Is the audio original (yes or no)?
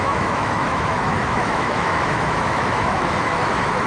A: no